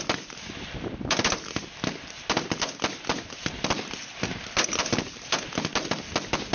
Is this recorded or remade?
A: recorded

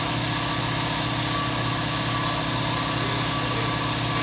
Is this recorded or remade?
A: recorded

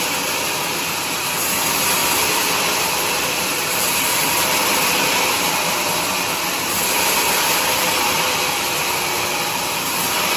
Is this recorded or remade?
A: remade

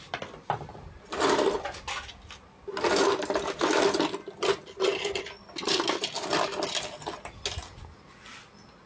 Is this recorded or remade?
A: recorded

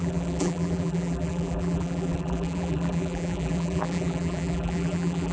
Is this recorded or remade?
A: remade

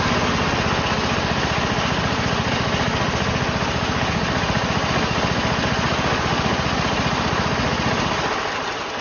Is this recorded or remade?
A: recorded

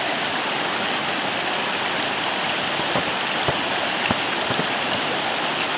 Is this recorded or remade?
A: recorded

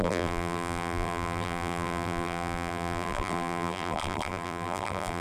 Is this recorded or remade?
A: remade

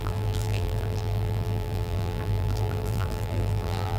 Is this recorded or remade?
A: remade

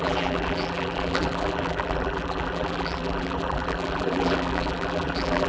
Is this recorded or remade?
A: remade